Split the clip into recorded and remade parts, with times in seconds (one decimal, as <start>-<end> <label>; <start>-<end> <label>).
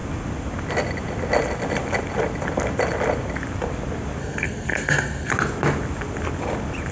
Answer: 0.0-4.2 recorded; 4.2-5.3 remade; 5.3-6.9 recorded